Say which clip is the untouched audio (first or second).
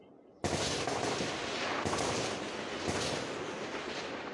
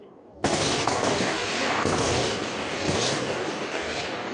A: first